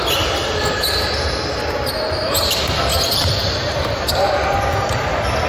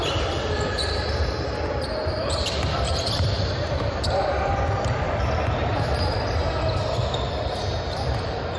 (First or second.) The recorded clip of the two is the first